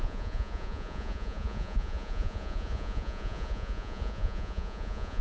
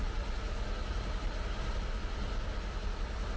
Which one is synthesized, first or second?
first